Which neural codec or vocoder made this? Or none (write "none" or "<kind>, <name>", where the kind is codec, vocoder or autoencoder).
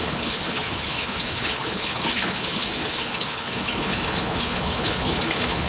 codec, HILCodec